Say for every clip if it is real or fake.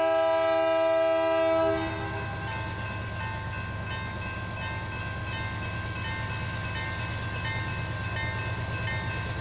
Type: real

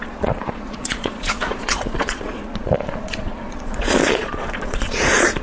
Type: fake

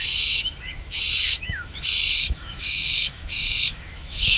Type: fake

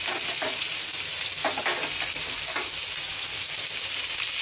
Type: real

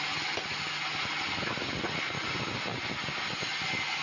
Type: real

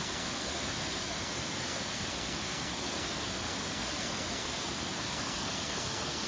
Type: fake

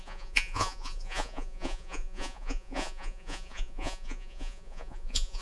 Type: fake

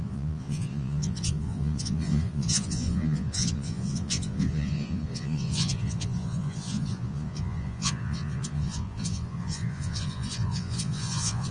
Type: fake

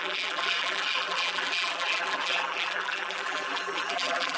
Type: fake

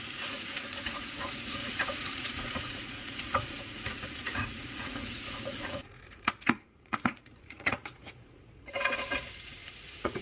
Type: fake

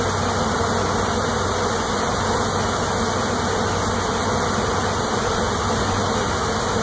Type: real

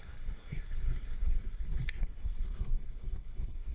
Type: fake